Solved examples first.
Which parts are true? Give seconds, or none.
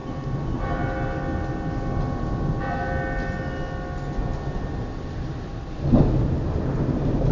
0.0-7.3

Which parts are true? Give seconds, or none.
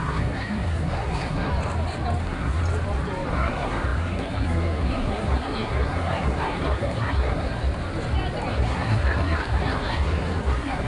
1.5-2.2; 2.6-3.3; 7.6-8.5